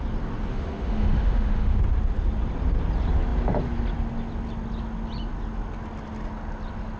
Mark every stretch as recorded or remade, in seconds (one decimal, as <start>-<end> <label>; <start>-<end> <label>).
0.0-0.5 recorded; 0.5-1.8 remade; 1.8-7.0 recorded